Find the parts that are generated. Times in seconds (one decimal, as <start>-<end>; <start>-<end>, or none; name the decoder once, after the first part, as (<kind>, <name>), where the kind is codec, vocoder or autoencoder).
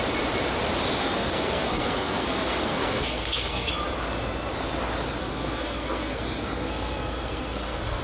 1.0-3.7 (codec, SNAC); 5.2-8.0